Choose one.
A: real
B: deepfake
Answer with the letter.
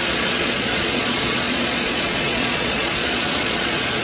B